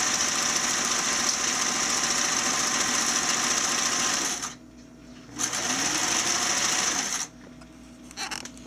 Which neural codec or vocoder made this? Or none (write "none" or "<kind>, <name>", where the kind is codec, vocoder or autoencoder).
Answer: none